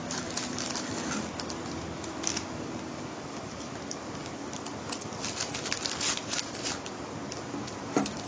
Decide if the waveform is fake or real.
real